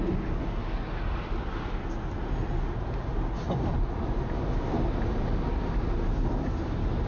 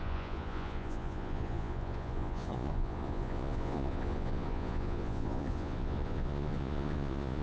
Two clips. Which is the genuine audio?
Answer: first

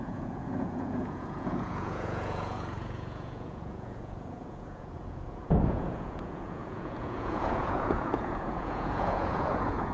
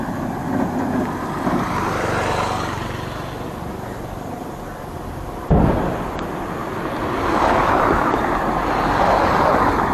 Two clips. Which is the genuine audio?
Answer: second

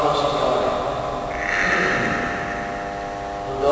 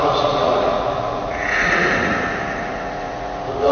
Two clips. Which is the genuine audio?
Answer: first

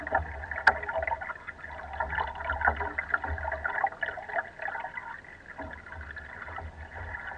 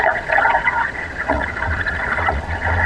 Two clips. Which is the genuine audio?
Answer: first